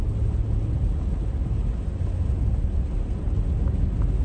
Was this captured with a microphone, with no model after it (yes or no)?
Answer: yes